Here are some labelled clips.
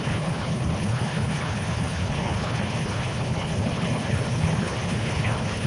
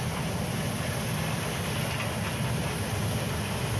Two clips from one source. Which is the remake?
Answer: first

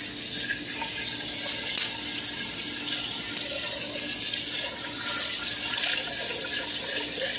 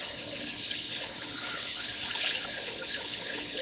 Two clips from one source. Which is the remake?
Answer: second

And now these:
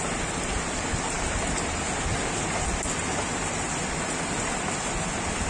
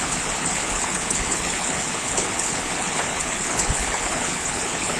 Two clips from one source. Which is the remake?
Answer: second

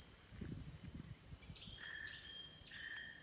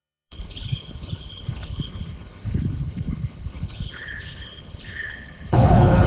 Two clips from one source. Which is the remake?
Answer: second